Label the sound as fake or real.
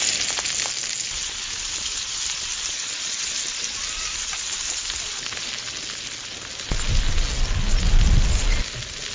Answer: real